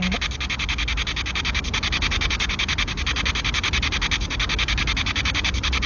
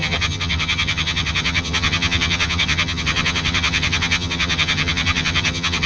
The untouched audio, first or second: first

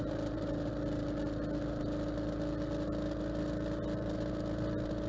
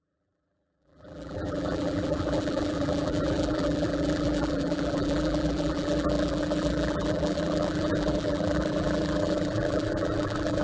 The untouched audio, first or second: first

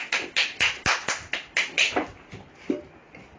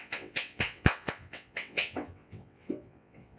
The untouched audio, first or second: first